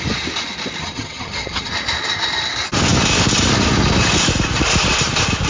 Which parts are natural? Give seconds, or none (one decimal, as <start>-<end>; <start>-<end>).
0.0-0.8; 1.7-5.5